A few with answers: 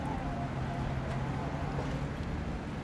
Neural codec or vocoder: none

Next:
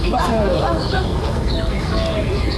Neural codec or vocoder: codec, SNAC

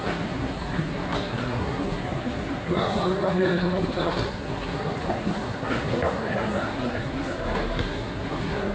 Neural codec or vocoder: codec, SNAC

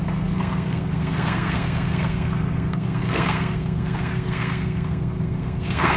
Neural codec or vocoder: codec, SNAC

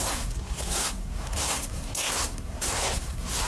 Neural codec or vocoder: codec, SNAC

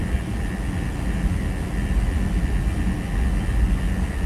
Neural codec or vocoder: none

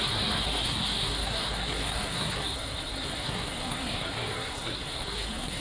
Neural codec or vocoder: codec, SNAC